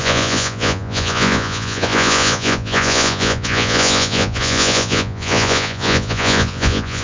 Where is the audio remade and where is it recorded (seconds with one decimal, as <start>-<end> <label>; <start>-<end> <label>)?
0.0-7.0 remade